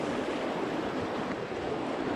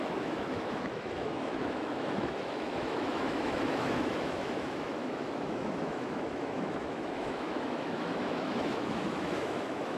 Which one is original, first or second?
first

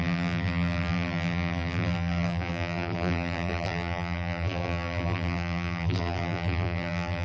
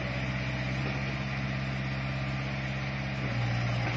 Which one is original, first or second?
second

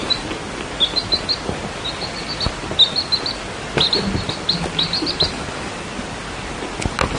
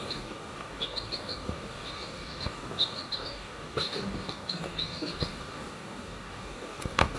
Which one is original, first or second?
first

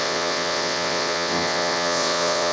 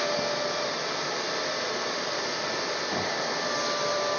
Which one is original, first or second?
second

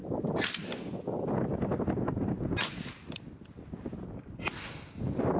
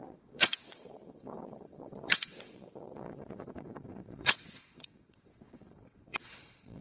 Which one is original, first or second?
first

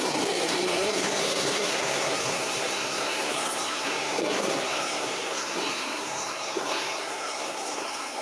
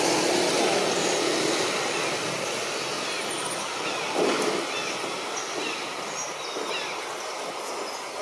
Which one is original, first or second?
second